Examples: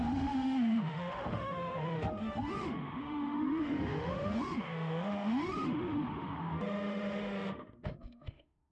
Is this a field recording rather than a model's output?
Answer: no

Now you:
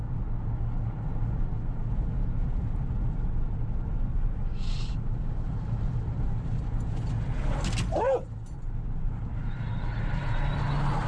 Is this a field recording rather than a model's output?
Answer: yes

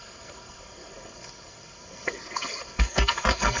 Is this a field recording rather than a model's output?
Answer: no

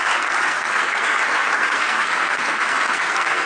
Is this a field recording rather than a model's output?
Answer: no